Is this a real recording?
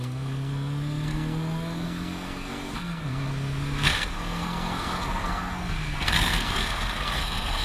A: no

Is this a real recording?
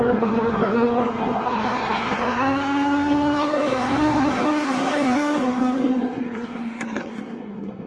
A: no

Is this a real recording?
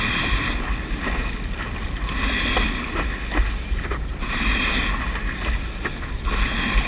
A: yes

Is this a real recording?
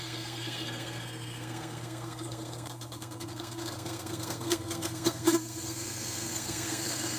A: no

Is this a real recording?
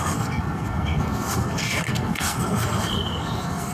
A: no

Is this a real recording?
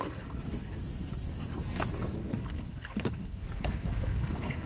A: no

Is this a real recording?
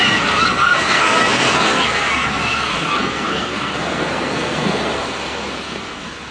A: no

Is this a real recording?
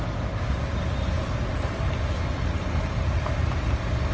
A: yes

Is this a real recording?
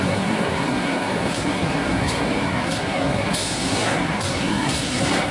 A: no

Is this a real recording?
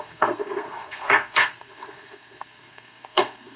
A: no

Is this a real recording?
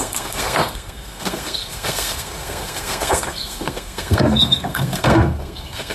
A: no